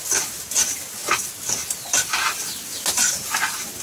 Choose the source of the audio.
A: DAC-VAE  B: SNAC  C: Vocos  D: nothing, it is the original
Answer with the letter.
D